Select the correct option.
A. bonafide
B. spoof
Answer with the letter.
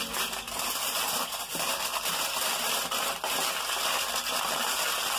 A